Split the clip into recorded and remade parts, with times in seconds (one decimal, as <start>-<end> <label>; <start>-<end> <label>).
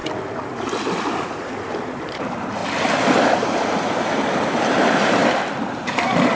0.0-1.1 recorded; 1.1-2.6 remade; 2.6-3.2 recorded; 3.2-5.2 remade; 5.2-5.8 recorded; 5.8-6.4 remade